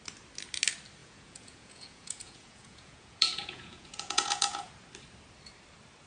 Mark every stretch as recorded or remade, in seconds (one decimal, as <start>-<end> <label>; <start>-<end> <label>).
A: 0.0-1.0 recorded; 1.0-4.7 remade; 4.7-6.1 recorded